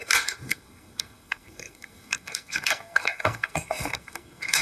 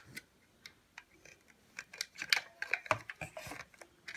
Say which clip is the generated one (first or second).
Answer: first